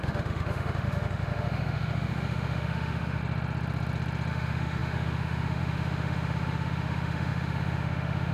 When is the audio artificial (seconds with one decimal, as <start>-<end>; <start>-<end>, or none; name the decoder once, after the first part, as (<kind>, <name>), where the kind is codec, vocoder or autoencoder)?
0.0-3.2 (autoencoder, DAC-VAE); 4.3-8.3